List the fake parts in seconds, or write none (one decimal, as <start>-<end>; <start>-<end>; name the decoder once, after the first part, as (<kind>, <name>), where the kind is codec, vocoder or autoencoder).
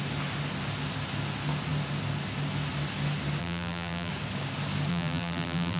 3.4-4.1 (vocoder, BigVGAN v2); 4.9-5.8